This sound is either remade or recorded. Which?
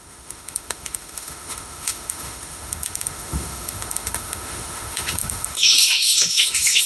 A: remade